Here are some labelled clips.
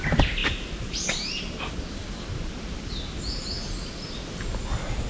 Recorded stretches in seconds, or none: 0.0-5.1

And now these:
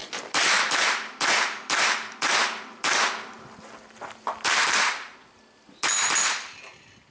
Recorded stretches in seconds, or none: 0.0-7.1

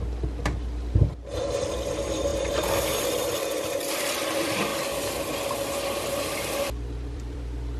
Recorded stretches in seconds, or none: 4.7-6.2

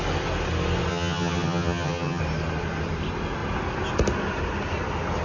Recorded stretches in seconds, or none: 0.0-0.9; 2.2-5.2

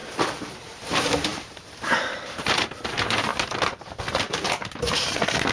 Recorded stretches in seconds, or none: 0.0-0.6; 3.3-4.3

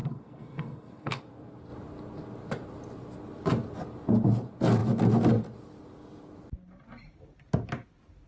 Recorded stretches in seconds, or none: 1.2-8.3

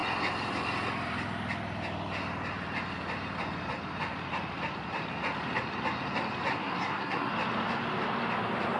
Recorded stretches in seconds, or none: 0.0-6.5; 7.3-8.8

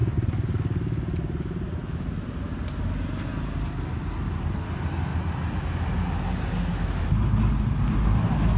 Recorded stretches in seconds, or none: 0.0-8.6